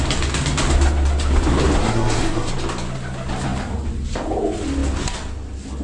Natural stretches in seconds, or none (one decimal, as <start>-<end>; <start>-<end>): 0.0-1.8; 2.5-5.8